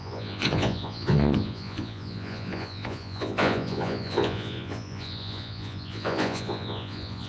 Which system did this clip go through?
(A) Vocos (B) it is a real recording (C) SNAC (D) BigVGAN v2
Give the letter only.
A